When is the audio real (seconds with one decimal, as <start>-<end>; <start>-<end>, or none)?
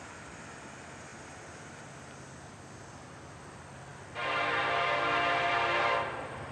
0.0-6.5